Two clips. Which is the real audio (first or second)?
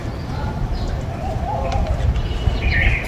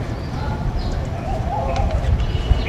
second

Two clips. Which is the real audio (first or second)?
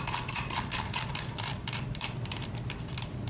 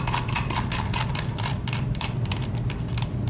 second